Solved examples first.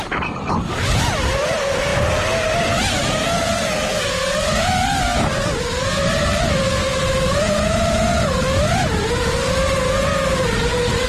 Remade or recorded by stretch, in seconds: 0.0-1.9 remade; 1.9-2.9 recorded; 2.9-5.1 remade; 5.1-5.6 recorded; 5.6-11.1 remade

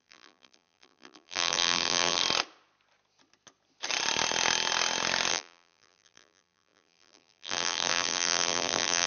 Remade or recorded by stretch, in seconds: 0.0-2.2 remade; 2.2-5.3 recorded; 5.3-9.1 remade

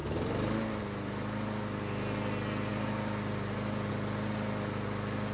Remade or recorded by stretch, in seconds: 0.0-5.3 recorded

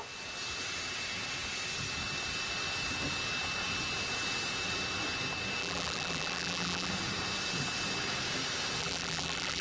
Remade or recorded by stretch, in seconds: 0.0-5.6 recorded; 5.6-6.9 remade; 6.9-8.8 recorded; 8.8-9.6 remade

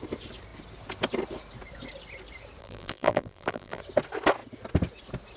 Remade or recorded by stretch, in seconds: 0.0-2.6 recorded; 2.6-3.8 remade; 3.8-5.4 recorded

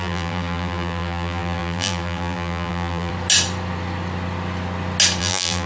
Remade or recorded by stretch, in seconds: 0.0-3.1 remade; 3.1-5.2 recorded; 5.2-5.7 remade

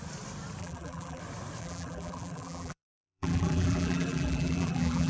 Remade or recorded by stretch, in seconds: 0.0-0.6 recorded; 0.6-1.2 remade; 1.2-1.6 recorded; 1.6-5.1 remade